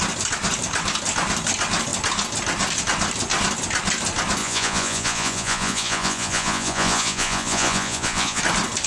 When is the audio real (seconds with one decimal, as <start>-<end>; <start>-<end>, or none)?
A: 0.0-4.4; 8.4-8.9